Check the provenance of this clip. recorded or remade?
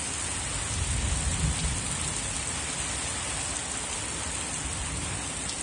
recorded